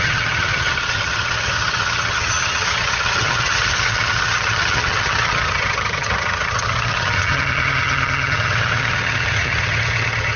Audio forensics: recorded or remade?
remade